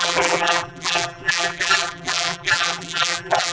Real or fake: fake